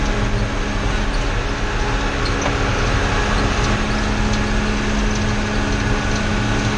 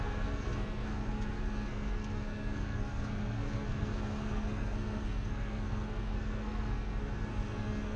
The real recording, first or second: first